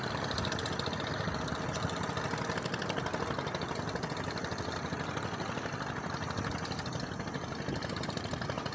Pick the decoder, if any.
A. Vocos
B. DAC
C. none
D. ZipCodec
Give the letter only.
C